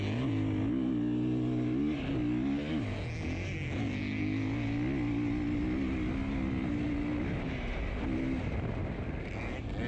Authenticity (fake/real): real